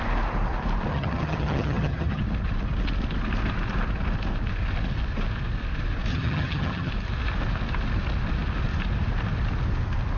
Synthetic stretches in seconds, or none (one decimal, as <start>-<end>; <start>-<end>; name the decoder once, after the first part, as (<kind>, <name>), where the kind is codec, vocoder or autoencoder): 0.9-2.2 (vocoder, HiFi-GAN); 6.1-6.9